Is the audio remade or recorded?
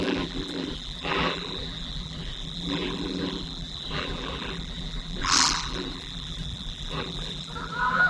remade